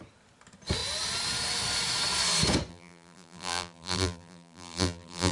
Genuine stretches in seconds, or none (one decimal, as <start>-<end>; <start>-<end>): 0.0-2.7